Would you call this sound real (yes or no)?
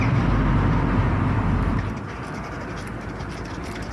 yes